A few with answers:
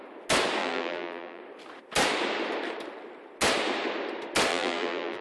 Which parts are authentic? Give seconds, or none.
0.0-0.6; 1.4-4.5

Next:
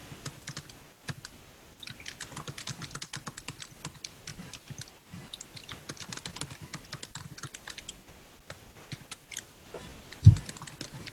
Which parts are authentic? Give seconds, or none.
0.0-4.3; 5.2-11.1

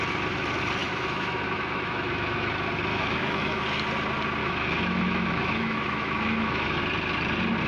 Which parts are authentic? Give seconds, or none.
0.0-0.8; 2.5-2.9; 3.6-4.4; 6.8-7.7

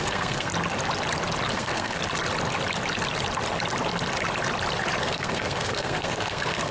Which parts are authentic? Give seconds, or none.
0.5-1.5; 2.0-5.0

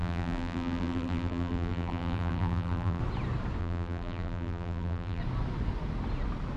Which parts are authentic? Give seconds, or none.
3.0-3.6; 5.2-6.6

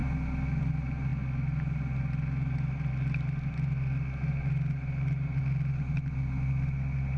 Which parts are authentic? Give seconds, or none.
0.0-7.2

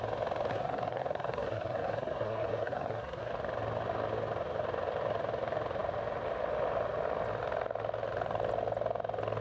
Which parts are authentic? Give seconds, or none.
0.0-0.5; 3.3-9.4

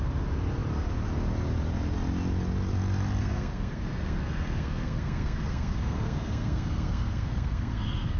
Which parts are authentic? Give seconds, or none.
0.0-3.2